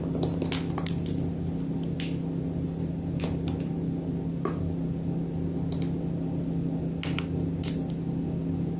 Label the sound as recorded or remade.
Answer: recorded